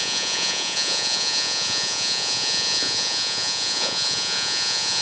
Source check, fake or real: fake